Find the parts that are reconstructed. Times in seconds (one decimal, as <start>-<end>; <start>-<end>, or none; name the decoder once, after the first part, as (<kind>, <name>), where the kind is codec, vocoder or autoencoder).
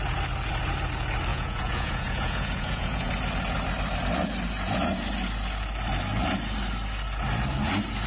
1.3-3.1 (vocoder, Vocos)